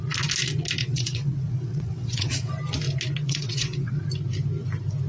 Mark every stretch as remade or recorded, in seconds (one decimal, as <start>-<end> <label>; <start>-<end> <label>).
0.0-0.8 recorded; 0.8-2.5 remade; 2.5-3.2 recorded; 3.2-4.0 remade; 4.0-5.1 recorded